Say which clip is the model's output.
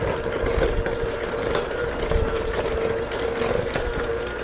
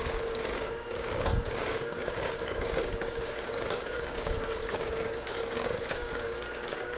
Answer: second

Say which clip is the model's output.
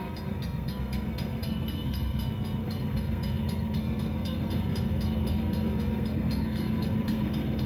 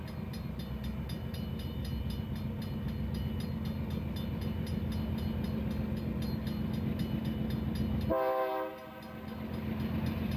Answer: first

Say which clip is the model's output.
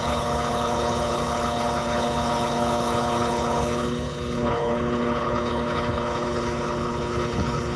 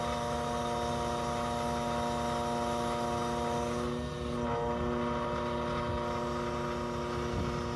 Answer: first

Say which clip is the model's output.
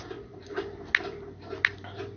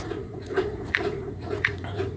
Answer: second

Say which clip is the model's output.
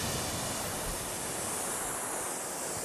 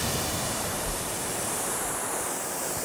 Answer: second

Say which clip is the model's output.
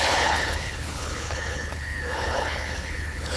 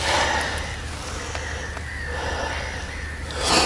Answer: first